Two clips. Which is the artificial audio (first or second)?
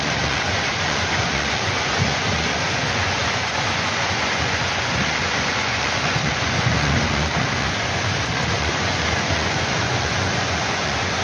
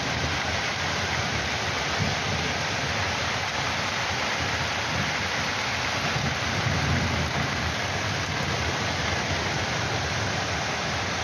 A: first